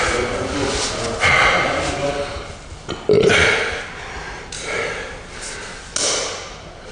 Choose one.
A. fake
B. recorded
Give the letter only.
B